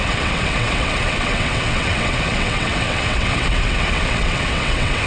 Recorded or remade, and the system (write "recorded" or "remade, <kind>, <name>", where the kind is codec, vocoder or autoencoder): remade, vocoder, WaveNeXt